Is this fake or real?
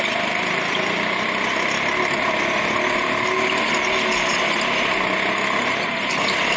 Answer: real